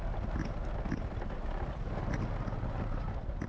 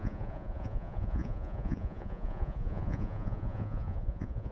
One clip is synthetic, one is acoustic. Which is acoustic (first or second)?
first